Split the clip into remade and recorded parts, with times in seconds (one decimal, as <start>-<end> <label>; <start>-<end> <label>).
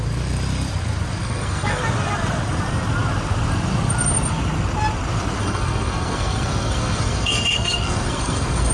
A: 0.0-1.2 recorded; 1.2-1.8 remade; 1.8-5.4 recorded; 5.4-8.7 remade